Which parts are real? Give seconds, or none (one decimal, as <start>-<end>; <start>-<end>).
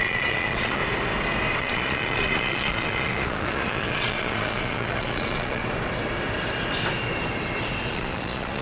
0.8-1.6; 5.6-7.9